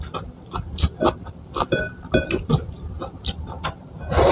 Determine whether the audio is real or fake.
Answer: real